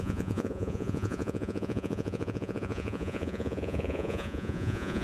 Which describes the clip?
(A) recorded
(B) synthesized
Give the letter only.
B